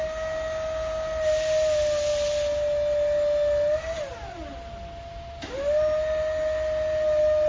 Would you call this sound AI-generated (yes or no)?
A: no